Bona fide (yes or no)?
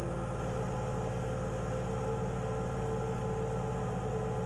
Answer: yes